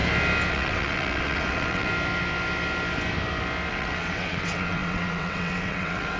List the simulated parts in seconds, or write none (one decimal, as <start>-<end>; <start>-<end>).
0.5-1.9; 3.7-6.2